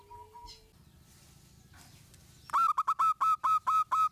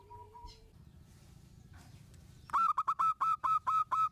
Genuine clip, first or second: first